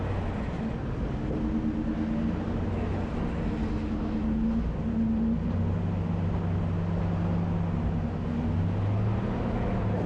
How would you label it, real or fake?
real